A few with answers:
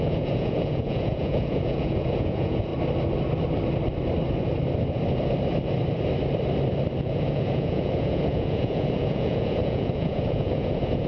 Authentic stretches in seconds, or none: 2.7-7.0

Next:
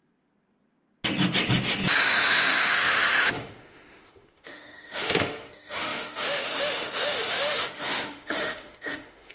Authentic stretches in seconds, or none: 0.0-2.0

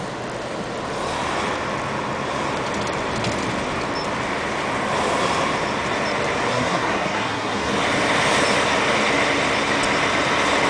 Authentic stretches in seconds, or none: 0.0-6.5; 7.7-10.7

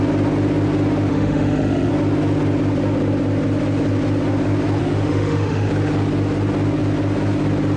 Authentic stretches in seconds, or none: 0.0-1.1; 1.9-4.8; 5.7-7.8

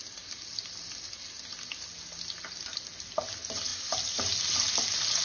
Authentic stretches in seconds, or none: 0.0-5.2

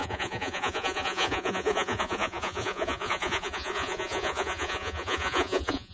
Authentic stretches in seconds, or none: none